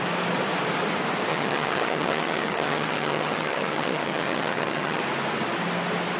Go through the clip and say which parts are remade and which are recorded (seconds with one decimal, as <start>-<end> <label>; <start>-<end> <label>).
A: 0.0-1.3 recorded; 1.3-5.0 remade; 5.0-6.2 recorded